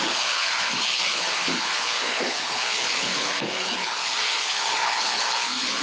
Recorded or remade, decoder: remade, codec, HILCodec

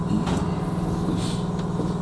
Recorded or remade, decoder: recorded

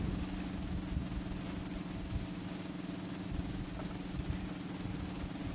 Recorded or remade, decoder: recorded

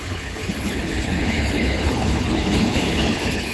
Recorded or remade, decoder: remade, codec, HILCodec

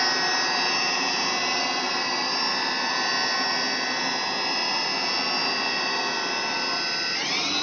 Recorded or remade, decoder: recorded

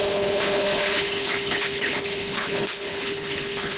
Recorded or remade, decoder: remade, codec, HILCodec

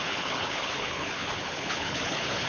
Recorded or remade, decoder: remade, codec, HILCodec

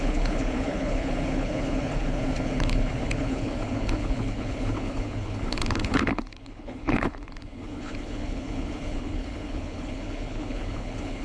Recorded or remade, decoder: remade, codec, HILCodec